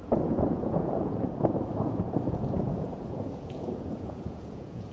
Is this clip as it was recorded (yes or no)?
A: no